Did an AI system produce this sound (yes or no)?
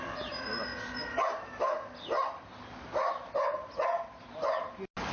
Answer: no